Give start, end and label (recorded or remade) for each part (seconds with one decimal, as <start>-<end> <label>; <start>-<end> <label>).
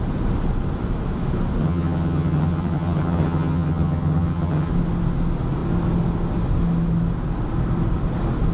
0.0-1.6 recorded; 1.6-4.7 remade; 4.7-8.5 recorded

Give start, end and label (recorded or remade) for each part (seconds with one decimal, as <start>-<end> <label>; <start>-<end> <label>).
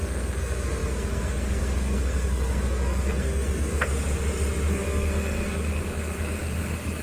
0.0-3.9 remade; 3.9-4.7 recorded; 4.7-7.0 remade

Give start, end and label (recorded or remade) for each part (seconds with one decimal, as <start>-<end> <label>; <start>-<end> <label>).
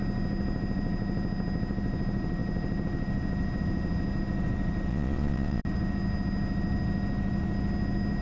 0.0-4.9 recorded; 4.9-5.6 remade; 5.6-8.2 recorded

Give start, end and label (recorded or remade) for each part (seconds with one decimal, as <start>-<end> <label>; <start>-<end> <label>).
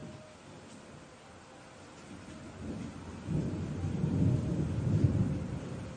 0.0-6.0 recorded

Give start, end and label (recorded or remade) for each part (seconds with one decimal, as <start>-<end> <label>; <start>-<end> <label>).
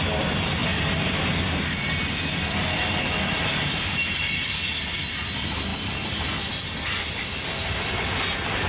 0.0-8.7 recorded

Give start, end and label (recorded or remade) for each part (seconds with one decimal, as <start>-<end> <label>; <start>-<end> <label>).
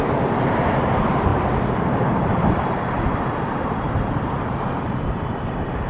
0.0-5.9 remade